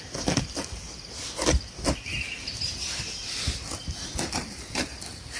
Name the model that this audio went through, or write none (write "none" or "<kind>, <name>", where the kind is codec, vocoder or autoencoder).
none